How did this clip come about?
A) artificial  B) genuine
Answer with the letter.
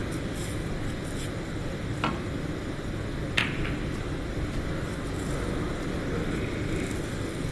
B